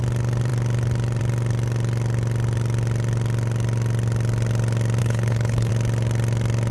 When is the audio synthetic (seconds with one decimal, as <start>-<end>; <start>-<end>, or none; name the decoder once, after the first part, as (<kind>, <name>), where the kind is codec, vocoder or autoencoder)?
5.0-5.7 (codec, HILCodec)